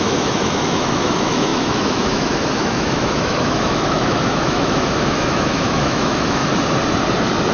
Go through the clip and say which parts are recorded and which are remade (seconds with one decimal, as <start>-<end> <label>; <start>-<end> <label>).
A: 0.0-6.4 remade; 6.4-7.5 recorded